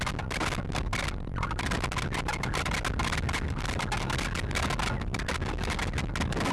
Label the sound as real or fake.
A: real